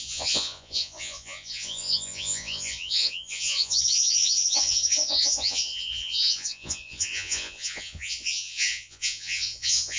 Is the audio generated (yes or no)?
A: yes